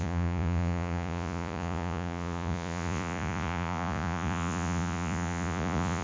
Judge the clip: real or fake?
fake